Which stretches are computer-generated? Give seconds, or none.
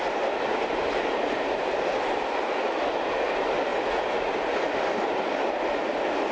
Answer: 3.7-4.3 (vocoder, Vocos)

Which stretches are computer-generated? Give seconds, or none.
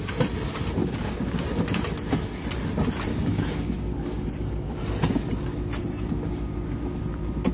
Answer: 0.8-1.4 (codec, DAC); 3.1-4.8; 5.8-7.0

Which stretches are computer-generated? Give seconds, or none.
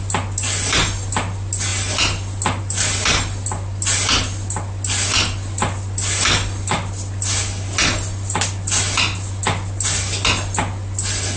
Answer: none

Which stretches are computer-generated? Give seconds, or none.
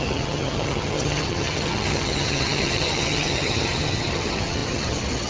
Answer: 0.0-5.3 (vocoder, HiFi-GAN)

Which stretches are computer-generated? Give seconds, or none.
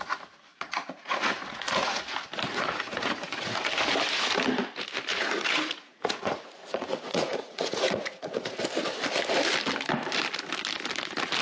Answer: 0.5-2.0 (vocoder, Vocos); 2.5-3.7; 5.1-8.6